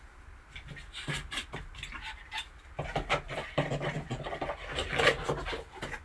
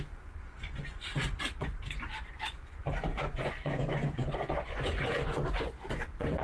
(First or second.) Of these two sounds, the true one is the first